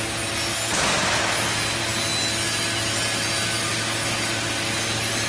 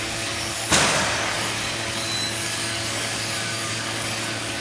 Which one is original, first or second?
first